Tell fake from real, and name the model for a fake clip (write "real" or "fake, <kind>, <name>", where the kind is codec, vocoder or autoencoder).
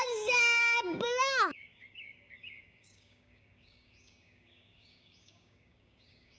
fake, codec, DAC